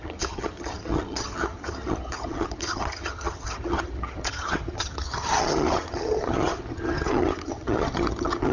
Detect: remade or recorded remade